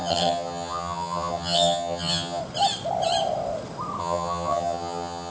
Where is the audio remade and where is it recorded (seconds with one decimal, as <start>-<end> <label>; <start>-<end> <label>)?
0.0-2.4 remade; 2.4-4.0 recorded; 4.0-5.3 remade